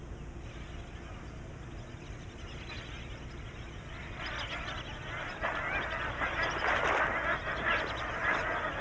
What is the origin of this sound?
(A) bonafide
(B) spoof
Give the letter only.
A